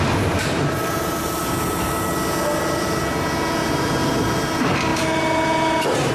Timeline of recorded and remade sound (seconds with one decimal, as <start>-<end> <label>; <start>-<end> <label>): 0.0-0.4 recorded; 0.4-1.4 remade; 1.4-3.6 recorded; 3.6-4.1 remade; 4.1-4.9 recorded; 4.9-6.1 remade